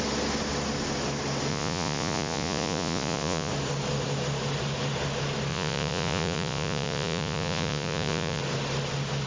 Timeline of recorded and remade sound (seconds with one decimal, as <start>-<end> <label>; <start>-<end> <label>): 0.0-1.5 recorded; 1.5-3.5 remade; 3.5-5.5 recorded; 5.5-8.4 remade; 8.4-9.3 recorded